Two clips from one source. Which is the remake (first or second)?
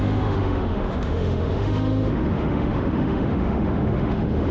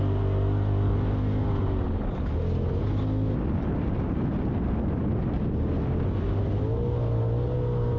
first